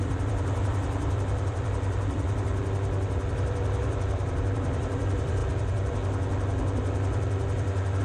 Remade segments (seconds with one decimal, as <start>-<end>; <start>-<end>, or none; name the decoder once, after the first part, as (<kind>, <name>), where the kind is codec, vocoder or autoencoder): 0.0-2.5 (vocoder, BigVGAN v2); 3.3-5.4